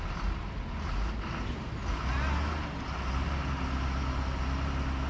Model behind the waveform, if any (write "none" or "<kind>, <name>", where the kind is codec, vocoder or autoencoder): none